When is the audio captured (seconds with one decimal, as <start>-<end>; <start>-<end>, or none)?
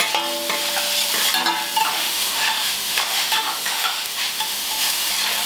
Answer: 0.0-1.8; 5.1-5.5